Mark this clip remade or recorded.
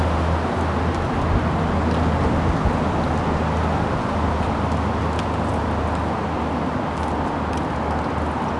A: recorded